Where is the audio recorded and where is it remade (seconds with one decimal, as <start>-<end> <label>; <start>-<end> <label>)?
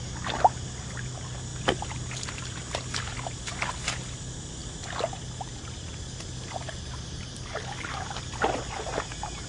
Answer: 0.0-9.5 recorded